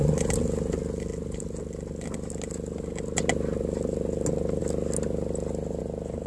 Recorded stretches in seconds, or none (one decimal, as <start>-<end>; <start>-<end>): 0.0-6.3